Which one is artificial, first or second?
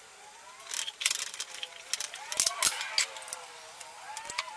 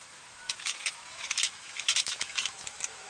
second